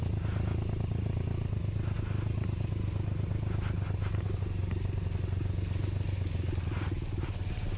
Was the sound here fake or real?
real